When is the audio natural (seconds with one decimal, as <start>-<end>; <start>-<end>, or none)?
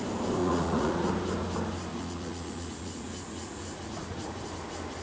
0.0-0.4; 1.1-1.9; 4.4-5.0